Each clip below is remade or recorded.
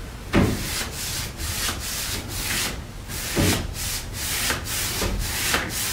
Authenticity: remade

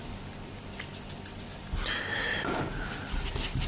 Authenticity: recorded